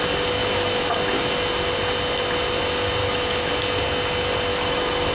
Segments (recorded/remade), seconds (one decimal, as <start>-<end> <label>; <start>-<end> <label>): 0.0-0.4 recorded; 0.4-0.9 remade; 0.9-3.0 recorded; 3.0-3.5 remade; 3.5-4.5 recorded; 4.5-5.1 remade